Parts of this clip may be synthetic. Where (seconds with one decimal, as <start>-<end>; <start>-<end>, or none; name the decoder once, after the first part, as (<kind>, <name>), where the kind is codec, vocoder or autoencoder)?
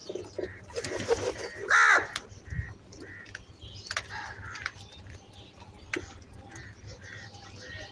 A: none